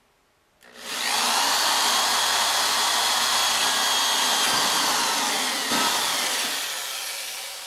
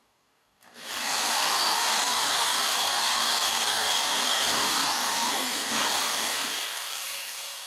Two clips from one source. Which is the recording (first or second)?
first